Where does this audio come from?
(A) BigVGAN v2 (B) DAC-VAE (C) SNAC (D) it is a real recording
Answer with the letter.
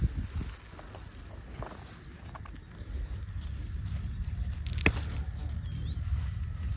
D